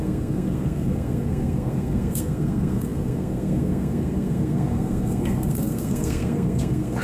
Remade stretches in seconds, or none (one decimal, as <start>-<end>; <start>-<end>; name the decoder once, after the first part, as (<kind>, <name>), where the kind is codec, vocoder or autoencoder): 0.0-7.0 (codec, SNAC)